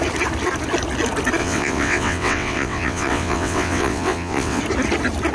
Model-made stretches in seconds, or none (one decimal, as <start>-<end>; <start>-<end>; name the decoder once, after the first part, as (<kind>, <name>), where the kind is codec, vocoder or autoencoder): 1.4-4.6 (vocoder, WaveNeXt)